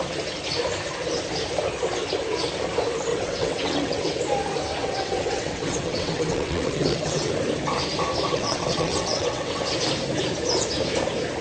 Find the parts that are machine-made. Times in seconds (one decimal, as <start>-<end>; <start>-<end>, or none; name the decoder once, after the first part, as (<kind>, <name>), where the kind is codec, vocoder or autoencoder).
3.1-4.2 (vocoder, WaveNeXt); 4.8-7.3; 8.3-9.7